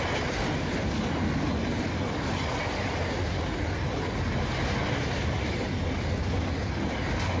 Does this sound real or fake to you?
real